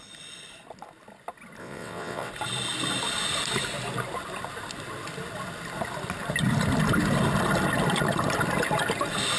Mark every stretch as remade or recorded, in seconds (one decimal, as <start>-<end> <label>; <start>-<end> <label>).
0.0-1.6 recorded; 1.6-2.3 remade; 2.3-9.4 recorded